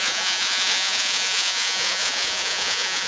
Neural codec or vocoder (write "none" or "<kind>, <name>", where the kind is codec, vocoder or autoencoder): vocoder, Vocos